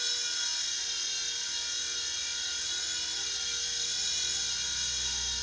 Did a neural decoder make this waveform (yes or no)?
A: no